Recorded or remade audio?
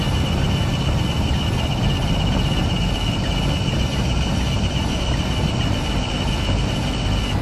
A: recorded